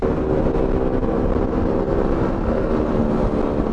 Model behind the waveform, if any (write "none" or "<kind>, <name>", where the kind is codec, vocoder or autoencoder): none